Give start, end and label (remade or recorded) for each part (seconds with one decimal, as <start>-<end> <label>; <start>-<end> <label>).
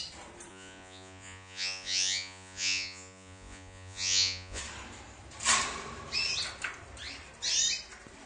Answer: 0.0-0.5 recorded; 0.5-4.6 remade; 4.6-8.3 recorded